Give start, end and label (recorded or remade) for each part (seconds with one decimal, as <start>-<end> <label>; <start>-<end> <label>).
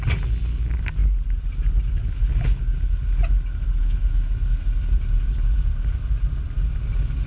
0.0-7.3 recorded